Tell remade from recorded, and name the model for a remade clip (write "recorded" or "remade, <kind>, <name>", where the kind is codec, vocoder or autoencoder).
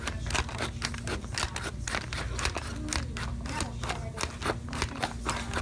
recorded